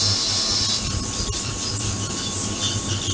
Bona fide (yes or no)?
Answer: yes